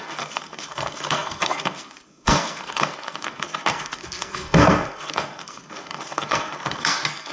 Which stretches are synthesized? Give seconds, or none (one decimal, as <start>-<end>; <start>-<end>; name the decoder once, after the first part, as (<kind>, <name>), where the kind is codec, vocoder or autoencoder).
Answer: 0.0-7.3 (codec, SNAC)